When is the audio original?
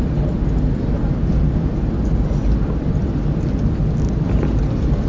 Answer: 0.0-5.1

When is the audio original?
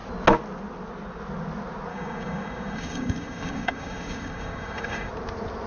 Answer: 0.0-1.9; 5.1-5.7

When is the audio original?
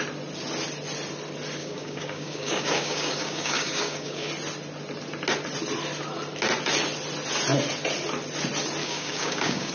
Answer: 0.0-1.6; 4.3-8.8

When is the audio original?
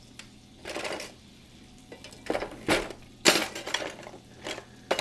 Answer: 0.0-5.0